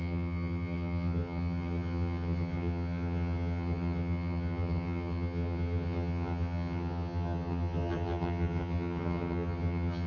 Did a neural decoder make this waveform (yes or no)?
yes